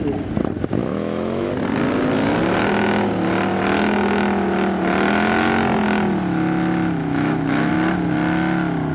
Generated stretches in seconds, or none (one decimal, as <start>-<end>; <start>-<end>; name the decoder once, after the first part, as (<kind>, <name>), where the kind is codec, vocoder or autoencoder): 0.8-1.5 (autoencoder, DAC-VAE); 7.0-7.7